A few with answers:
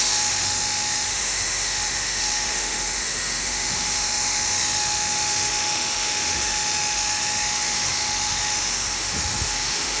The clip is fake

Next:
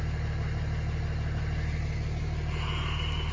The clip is real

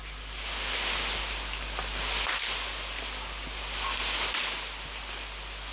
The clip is real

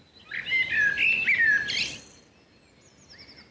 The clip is real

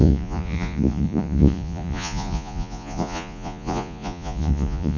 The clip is fake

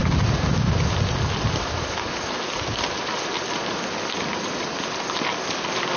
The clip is real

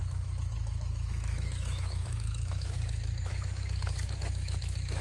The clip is fake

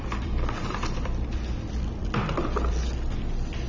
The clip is fake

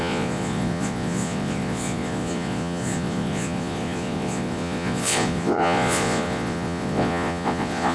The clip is fake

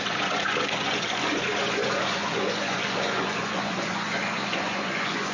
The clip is fake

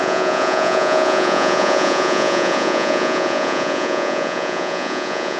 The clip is fake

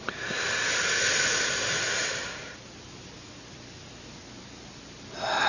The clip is real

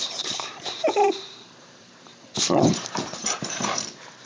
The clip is fake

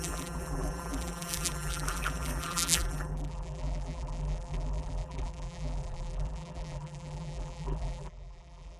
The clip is fake